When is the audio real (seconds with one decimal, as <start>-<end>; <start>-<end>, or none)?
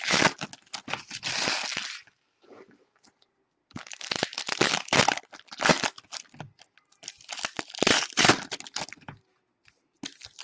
0.0-1.8; 2.5-3.6; 5.2-10.4